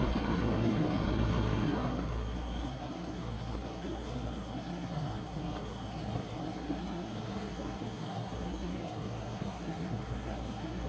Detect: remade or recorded remade